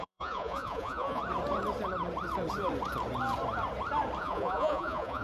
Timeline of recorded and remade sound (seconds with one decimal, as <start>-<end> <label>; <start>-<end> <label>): 0.0-1.2 remade; 1.2-4.2 recorded; 4.2-5.2 remade